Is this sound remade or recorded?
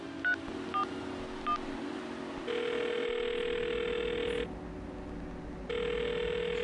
recorded